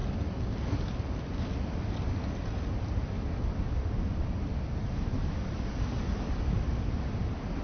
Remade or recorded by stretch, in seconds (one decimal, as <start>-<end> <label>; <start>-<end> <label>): 0.0-7.6 recorded